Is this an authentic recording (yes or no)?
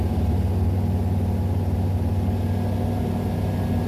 yes